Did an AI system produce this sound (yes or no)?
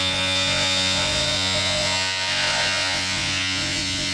yes